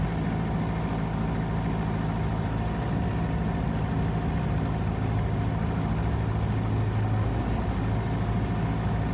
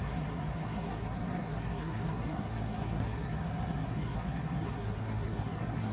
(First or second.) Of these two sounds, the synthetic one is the second